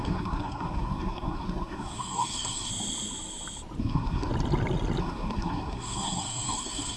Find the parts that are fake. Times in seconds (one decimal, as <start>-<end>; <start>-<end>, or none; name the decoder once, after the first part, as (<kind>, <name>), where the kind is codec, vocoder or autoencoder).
0.0-2.7 (codec, SNAC); 3.8-4.3; 5.0-7.0